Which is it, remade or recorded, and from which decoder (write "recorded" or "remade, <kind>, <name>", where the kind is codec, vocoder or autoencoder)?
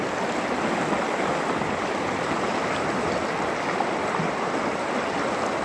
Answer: recorded